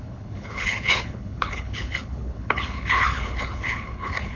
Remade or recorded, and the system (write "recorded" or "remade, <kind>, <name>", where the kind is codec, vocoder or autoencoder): remade, codec, HILCodec